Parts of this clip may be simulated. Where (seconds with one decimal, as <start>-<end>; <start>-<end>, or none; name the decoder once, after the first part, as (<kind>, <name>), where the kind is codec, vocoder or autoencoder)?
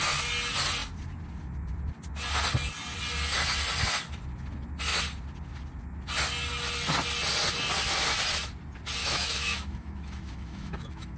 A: 9.0-11.2 (autoencoder, DAC-VAE)